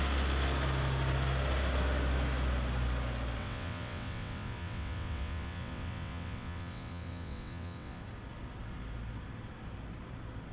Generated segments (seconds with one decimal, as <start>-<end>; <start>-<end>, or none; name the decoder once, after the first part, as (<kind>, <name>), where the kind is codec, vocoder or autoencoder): 3.4-8.0 (vocoder, WaveNeXt)